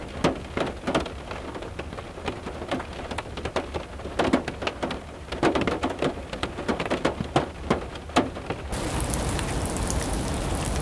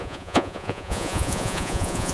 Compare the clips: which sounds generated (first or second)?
second